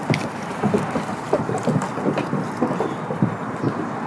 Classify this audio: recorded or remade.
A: recorded